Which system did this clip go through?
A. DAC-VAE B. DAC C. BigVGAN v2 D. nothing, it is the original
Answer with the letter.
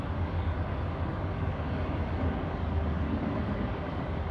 B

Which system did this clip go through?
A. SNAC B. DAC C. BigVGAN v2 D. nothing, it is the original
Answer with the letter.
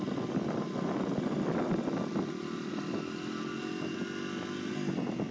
D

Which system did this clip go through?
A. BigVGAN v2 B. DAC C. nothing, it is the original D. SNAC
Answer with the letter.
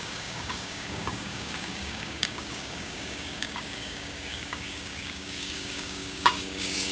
B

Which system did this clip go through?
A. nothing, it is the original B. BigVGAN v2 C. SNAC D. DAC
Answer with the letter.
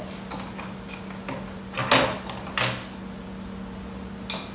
A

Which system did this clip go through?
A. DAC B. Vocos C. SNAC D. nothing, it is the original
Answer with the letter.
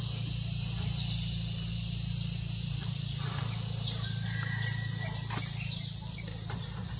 D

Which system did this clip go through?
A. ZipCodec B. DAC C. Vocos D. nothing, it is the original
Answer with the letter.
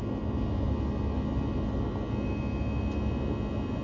D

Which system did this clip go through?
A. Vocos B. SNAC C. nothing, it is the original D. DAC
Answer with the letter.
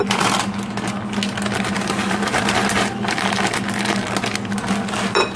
C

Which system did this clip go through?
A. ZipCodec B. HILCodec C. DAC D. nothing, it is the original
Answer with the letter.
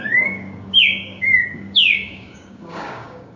C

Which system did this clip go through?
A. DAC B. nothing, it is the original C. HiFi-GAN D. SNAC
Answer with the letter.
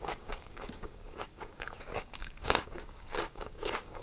A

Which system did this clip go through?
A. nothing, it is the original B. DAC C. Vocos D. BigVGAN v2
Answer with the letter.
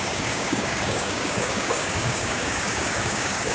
B